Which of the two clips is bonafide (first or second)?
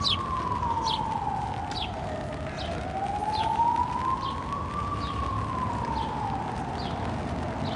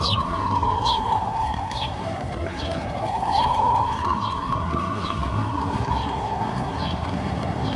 first